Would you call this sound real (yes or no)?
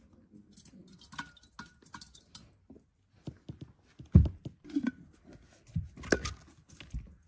yes